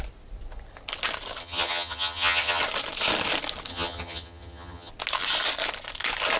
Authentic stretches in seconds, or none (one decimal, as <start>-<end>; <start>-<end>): 0.0-1.4; 2.6-3.7; 4.9-6.4